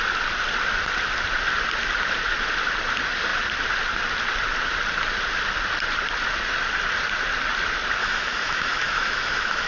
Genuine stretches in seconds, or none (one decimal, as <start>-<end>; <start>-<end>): 0.0-8.0